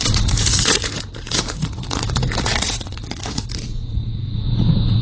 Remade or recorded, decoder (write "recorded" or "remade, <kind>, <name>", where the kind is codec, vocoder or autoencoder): remade, vocoder, Vocos